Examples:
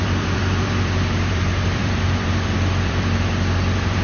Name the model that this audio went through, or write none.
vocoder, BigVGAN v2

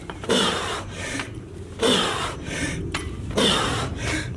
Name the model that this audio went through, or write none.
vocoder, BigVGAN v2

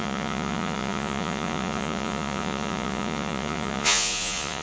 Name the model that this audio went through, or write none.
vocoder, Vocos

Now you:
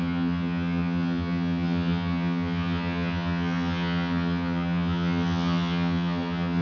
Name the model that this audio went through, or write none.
vocoder, HiFi-GAN